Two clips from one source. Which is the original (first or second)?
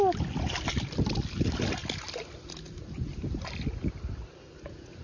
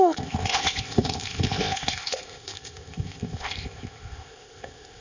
first